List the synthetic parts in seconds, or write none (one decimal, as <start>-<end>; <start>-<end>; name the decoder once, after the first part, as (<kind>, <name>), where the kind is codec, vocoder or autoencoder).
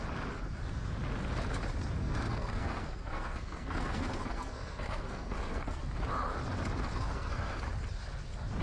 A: 2.0-5.8 (codec, SNAC); 6.9-7.6